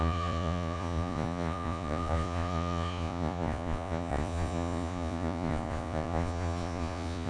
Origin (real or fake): fake